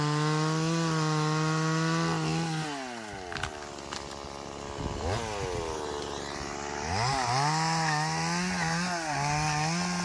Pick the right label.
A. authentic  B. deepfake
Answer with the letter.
A